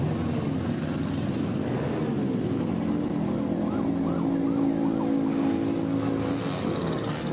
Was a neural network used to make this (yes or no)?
no